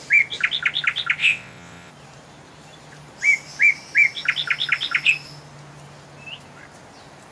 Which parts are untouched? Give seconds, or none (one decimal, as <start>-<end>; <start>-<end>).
0.0-1.2; 1.9-7.3